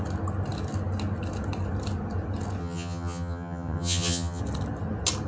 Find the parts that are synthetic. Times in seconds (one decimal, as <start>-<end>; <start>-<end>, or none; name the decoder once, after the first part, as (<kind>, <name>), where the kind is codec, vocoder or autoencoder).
2.6-4.4 (vocoder, HiFi-GAN)